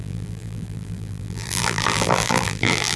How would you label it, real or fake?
fake